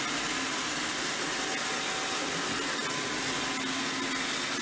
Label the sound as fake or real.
real